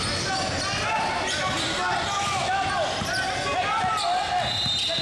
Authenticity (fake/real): real